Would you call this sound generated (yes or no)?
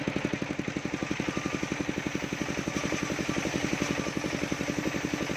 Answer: no